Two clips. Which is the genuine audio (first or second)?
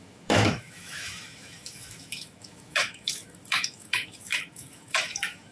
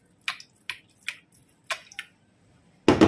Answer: second